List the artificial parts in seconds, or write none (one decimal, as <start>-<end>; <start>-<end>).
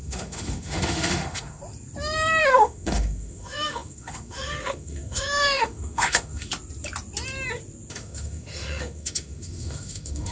0.0-1.6; 2.4-6.5; 7.9-10.3